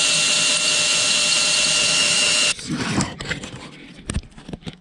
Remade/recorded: recorded